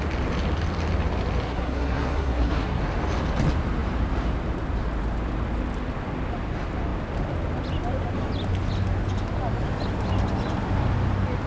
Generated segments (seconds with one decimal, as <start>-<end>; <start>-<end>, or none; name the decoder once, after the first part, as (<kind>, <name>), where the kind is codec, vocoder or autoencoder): 1.5-2.8 (codec, SNAC)